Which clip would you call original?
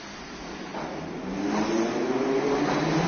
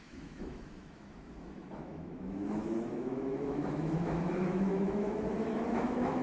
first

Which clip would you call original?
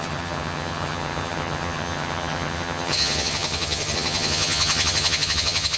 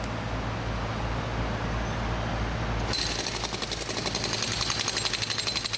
second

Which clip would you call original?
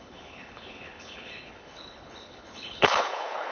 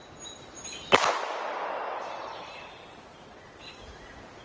second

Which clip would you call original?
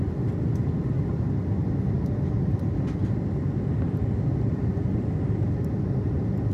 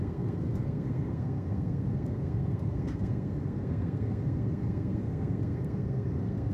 first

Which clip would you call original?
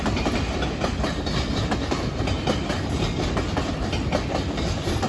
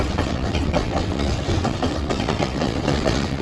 first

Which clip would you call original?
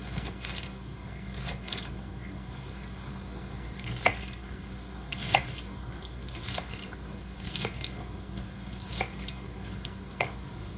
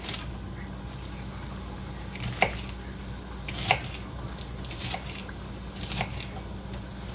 second